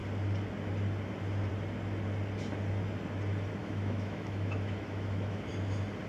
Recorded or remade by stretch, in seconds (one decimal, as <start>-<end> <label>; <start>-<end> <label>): 0.0-3.6 recorded; 3.6-5.5 remade; 5.5-6.1 recorded

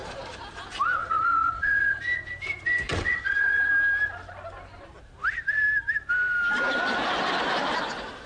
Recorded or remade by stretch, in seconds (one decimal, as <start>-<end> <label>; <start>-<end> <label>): 0.0-1.0 recorded; 1.0-2.0 remade; 2.0-2.9 recorded; 2.9-3.7 remade; 3.7-8.3 recorded

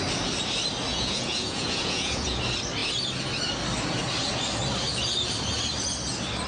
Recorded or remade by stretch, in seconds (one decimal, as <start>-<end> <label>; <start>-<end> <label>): 0.0-0.9 recorded; 0.9-2.4 remade; 2.4-6.5 recorded

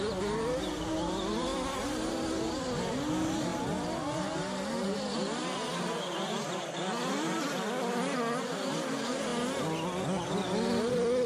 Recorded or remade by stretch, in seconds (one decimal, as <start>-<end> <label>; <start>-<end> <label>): 0.0-11.3 recorded

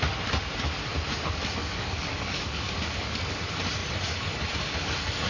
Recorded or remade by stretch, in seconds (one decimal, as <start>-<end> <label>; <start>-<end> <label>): 0.0-1.6 recorded; 1.6-3.4 remade; 3.4-5.3 recorded